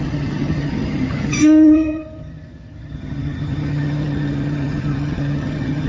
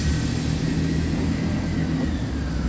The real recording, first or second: second